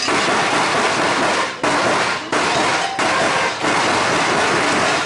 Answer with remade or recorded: recorded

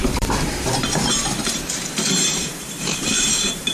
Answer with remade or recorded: remade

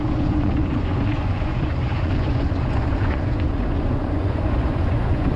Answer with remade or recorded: remade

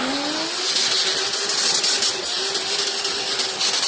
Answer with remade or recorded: recorded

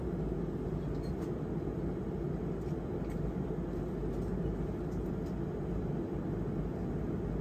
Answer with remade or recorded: recorded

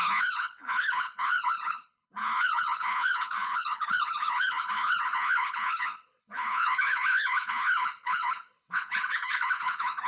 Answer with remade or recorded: remade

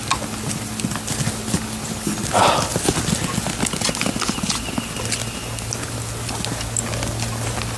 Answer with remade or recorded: recorded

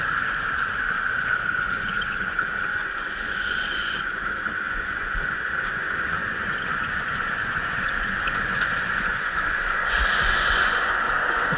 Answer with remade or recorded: remade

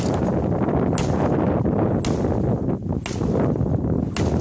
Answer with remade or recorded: recorded